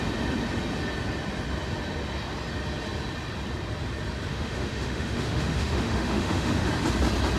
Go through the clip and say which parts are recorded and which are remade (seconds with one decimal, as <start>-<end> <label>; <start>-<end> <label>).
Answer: 0.0-4.3 recorded; 4.3-6.7 remade; 6.7-7.4 recorded